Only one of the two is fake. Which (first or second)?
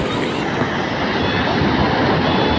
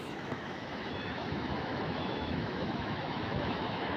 second